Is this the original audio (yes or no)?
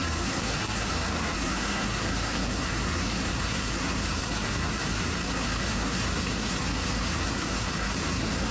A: no